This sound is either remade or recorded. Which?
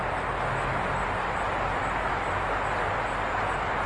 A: recorded